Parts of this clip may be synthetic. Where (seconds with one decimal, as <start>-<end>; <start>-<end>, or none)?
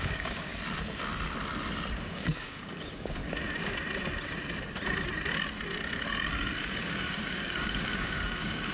0.0-0.5; 2.0-3.2; 6.6-8.7